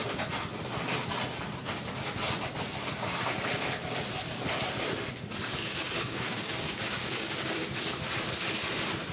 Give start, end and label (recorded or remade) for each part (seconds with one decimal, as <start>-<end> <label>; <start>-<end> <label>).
0.0-5.6 recorded; 5.6-7.7 remade; 7.7-9.1 recorded